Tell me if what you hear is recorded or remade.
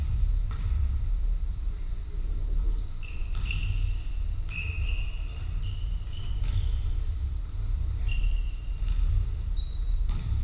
remade